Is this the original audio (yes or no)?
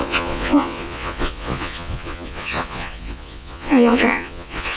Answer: no